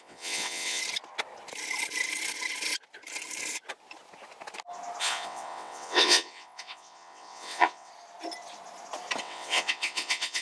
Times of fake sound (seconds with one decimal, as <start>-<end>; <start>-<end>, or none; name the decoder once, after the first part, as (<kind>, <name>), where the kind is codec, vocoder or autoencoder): 0.0-0.8 (vocoder, WaveNeXt); 5.0-7.9; 9.2-10.4

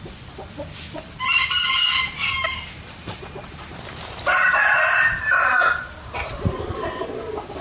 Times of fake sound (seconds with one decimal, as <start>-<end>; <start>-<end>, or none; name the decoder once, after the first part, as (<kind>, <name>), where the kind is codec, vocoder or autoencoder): 2.3-6.9 (vocoder, BigVGAN v2)

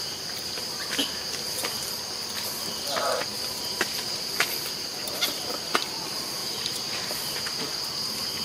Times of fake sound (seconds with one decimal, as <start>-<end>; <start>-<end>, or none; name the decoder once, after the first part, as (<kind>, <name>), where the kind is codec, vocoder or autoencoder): 0.0-8.4 (vocoder, BigVGAN v2)